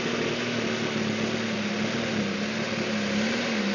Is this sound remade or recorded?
recorded